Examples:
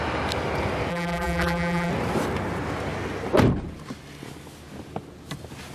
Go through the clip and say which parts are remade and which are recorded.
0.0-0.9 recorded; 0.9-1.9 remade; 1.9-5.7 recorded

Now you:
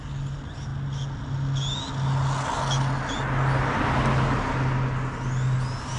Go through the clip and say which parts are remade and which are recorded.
0.0-6.0 recorded